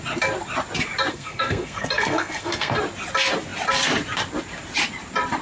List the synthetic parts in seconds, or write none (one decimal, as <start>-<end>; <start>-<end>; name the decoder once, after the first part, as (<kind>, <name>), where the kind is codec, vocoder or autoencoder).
1.1-2.8 (codec, SNAC)

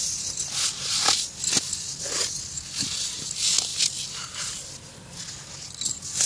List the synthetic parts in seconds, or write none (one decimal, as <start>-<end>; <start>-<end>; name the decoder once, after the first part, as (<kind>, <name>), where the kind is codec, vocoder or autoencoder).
none

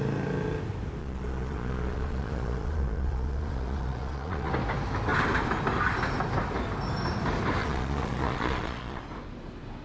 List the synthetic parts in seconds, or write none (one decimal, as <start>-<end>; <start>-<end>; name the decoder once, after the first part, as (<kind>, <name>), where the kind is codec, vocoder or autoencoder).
1.0-4.5 (vocoder, Vocos); 7.6-9.0

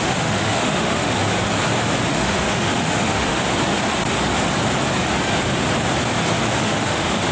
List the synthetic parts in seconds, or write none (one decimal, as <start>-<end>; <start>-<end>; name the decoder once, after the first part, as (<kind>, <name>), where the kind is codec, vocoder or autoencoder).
0.0-1.2 (autoencoder, DAC-VAE); 2.1-3.4; 6.6-7.3

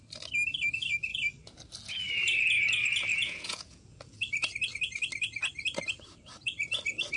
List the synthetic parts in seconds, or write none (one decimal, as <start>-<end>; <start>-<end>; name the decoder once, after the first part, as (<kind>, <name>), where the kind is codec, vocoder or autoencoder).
3.1-4.2 (vocoder, Vocos)

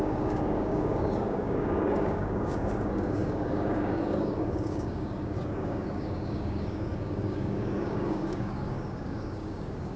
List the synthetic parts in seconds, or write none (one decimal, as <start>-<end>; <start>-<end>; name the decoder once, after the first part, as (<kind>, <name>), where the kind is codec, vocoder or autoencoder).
0.0-10.0 (codec, DAC)

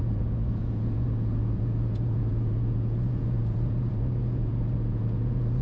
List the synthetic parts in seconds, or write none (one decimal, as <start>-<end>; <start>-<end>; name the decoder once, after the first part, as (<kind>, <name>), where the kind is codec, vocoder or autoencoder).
0.0-5.6 (vocoder, Vocos)

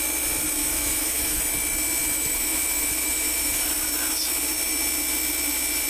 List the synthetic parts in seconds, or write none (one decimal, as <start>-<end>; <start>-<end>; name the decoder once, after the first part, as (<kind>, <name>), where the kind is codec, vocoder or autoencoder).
0.6-1.4 (autoencoder, DAC-VAE); 2.0-3.6